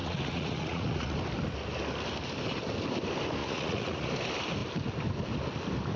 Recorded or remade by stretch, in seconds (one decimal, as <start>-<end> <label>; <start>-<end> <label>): 0.0-1.2 remade; 1.2-3.4 recorded; 3.4-4.1 remade; 4.1-6.0 recorded